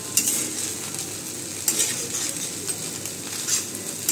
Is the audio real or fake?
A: real